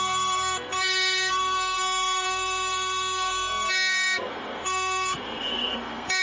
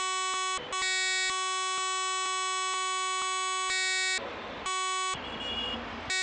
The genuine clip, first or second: second